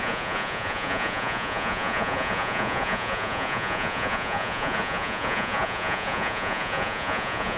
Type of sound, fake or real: fake